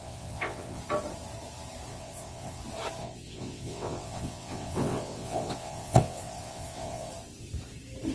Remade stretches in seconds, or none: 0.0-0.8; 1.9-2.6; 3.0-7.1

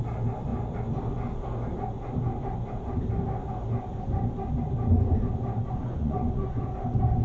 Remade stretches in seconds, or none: 5.8-6.6

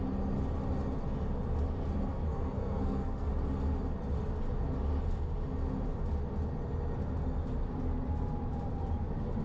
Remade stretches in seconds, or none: 2.1-3.3

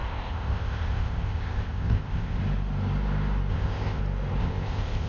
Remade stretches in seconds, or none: 0.0-2.4; 3.5-4.0; 4.4-5.1

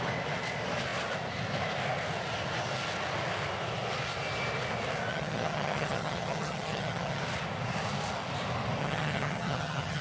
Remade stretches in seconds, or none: 5.1-7.2; 8.8-10.0

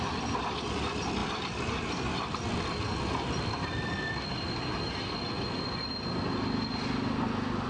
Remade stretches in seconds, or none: none

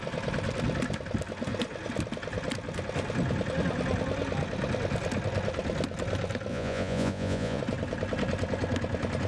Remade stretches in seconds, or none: 6.5-7.6